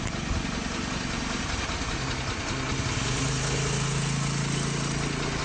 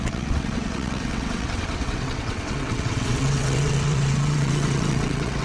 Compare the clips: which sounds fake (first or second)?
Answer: second